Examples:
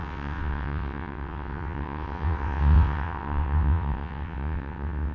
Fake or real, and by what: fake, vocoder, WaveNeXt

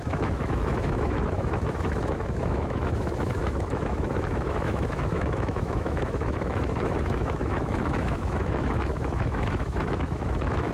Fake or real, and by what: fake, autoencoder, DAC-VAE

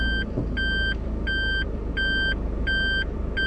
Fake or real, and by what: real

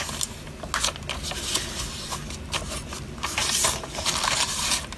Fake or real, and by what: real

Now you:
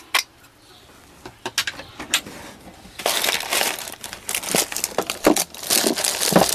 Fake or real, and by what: real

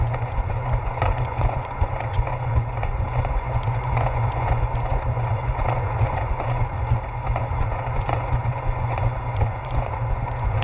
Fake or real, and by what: fake, vocoder, Vocos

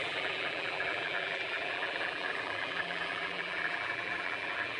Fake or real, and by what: fake, vocoder, BigVGAN v2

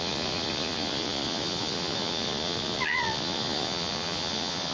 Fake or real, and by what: fake, vocoder, Vocos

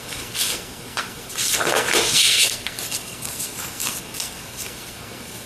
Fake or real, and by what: fake, codec, SNAC